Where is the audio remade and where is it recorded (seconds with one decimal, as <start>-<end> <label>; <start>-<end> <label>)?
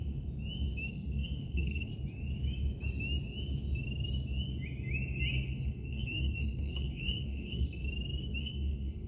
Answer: 0.0-0.9 recorded; 0.9-1.9 remade; 1.9-5.3 recorded; 5.3-7.8 remade; 7.8-8.4 recorded; 8.4-9.1 remade